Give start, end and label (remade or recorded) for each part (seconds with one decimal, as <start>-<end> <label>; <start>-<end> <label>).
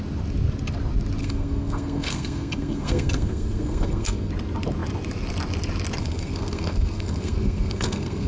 0.0-1.2 recorded; 1.2-4.3 remade; 4.3-6.0 recorded; 6.0-8.3 remade